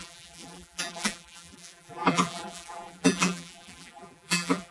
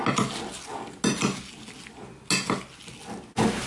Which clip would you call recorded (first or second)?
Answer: second